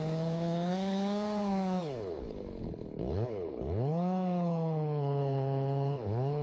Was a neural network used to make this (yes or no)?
yes